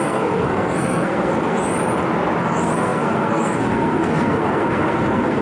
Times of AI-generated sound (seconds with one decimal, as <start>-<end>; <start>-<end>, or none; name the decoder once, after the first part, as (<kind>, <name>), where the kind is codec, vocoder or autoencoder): 0.0-1.7 (codec, SNAC); 2.4-5.4